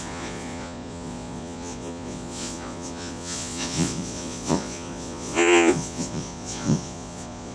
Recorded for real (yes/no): no